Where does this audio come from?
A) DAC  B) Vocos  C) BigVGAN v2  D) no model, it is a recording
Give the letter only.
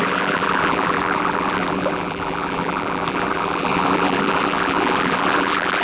C